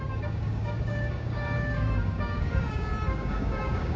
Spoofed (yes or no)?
yes